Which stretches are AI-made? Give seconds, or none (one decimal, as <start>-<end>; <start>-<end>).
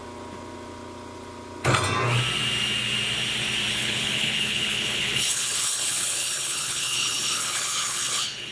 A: 3.7-8.5